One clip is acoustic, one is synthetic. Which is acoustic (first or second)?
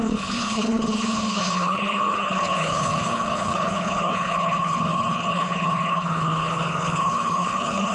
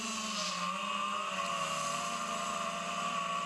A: second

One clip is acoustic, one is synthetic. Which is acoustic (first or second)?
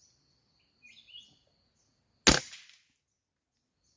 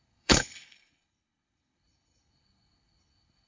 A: first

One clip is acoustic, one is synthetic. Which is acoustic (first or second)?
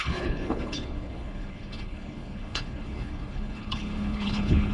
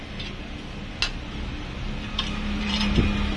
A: second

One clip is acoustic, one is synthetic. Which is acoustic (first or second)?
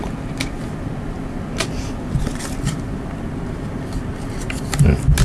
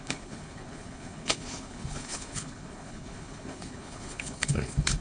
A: first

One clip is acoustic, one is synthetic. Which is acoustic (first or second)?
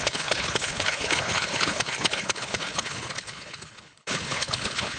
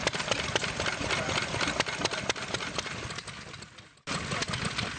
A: second